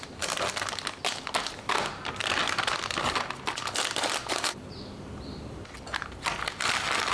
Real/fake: real